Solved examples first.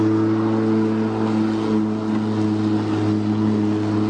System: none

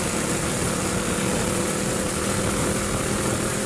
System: none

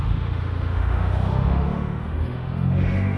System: autoencoder, DAC-VAE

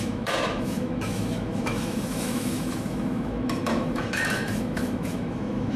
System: autoencoder, DAC-VAE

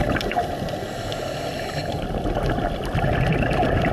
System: none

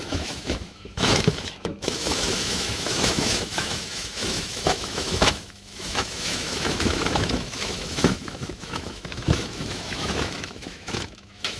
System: autoencoder, DAC-VAE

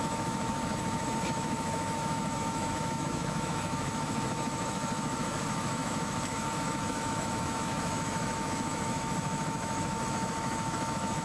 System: autoencoder, DAC-VAE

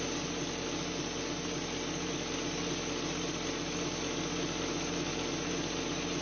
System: none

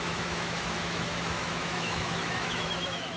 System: autoencoder, DAC-VAE